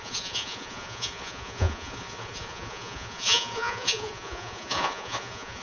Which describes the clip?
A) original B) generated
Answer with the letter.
B